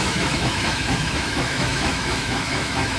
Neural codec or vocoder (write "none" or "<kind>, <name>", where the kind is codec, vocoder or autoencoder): autoencoder, DAC-VAE